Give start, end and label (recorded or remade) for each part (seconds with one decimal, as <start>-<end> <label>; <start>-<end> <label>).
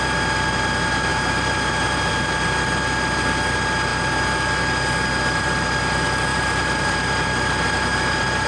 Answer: 0.0-1.1 recorded; 1.1-2.1 remade; 2.1-6.3 recorded; 6.3-8.5 remade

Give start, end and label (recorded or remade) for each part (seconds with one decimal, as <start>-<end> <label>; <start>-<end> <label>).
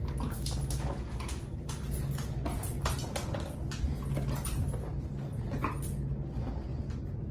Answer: 0.0-7.3 recorded